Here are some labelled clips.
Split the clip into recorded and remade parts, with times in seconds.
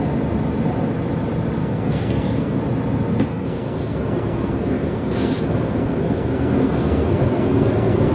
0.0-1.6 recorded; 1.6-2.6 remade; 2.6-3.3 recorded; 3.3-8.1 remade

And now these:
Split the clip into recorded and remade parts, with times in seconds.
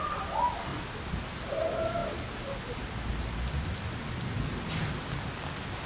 0.0-5.9 recorded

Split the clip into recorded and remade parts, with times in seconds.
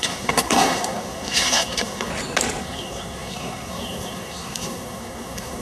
0.0-2.1 remade; 2.1-2.6 recorded; 2.6-5.6 remade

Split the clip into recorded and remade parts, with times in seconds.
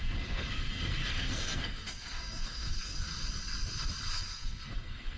0.0-3.1 remade; 3.1-4.1 recorded; 4.1-5.2 remade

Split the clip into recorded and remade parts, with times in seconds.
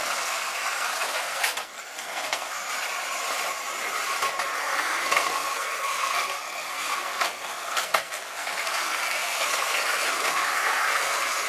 0.0-2.6 remade; 2.6-4.6 recorded; 4.6-11.5 remade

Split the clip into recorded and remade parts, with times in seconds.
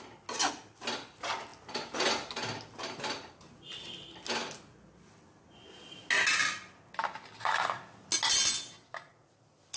0.0-9.8 recorded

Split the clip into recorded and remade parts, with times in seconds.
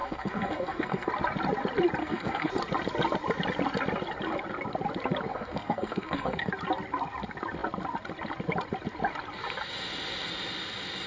0.0-1.1 remade; 1.1-2.0 recorded; 2.0-2.5 remade; 2.5-5.3 recorded; 5.3-6.5 remade; 6.5-11.1 recorded